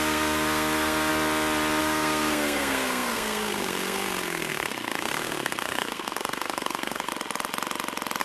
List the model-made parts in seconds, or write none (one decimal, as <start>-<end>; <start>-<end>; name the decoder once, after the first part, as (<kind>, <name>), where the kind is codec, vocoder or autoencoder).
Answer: 0.0-1.1 (codec, SNAC); 1.8-7.1